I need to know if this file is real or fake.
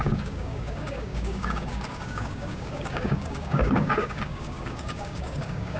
fake